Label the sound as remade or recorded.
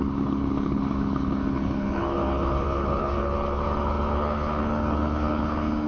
remade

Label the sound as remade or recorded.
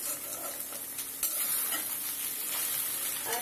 recorded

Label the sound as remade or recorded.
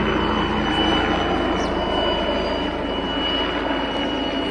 recorded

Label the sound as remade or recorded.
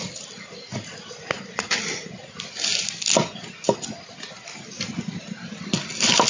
recorded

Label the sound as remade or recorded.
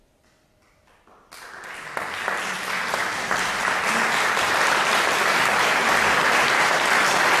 recorded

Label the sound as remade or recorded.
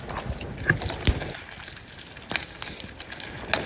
recorded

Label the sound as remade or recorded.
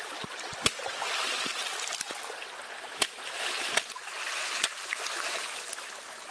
recorded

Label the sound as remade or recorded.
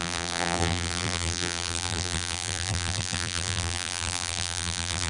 remade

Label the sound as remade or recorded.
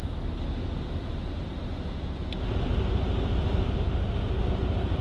recorded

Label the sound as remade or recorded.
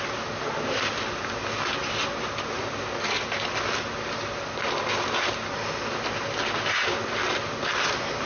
recorded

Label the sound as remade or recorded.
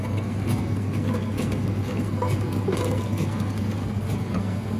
remade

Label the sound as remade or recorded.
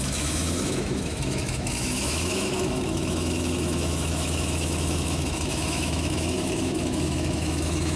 remade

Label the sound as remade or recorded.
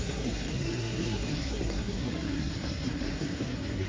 remade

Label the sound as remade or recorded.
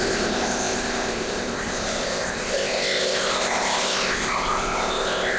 remade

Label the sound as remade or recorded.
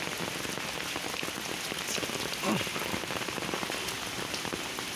recorded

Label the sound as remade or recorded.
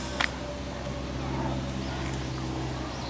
recorded